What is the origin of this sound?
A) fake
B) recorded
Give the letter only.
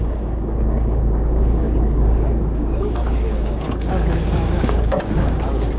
A